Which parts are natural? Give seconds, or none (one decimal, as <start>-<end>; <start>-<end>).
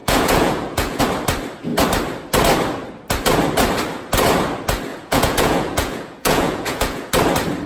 1.0-4.9; 7.1-7.7